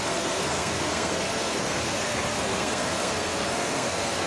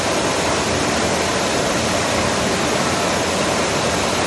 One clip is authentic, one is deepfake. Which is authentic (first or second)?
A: second